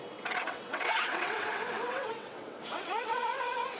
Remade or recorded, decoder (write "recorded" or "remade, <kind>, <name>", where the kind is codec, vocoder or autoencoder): remade, vocoder, WaveNeXt